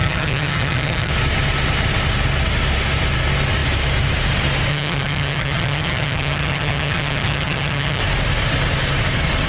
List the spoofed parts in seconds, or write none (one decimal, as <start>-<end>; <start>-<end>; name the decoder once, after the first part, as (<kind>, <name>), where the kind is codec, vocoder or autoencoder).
0.0-1.1 (vocoder, HiFi-GAN); 4.7-8.0